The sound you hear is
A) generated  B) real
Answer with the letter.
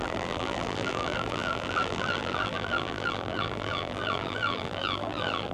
A